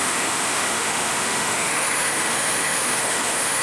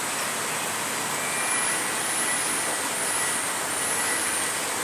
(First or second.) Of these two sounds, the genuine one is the second